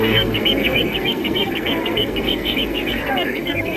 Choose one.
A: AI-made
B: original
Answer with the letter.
A